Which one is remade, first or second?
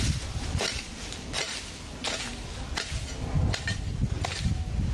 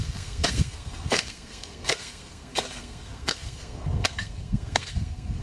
second